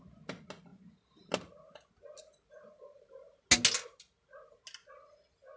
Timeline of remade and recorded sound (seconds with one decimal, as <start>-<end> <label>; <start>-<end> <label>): 0.0-5.6 recorded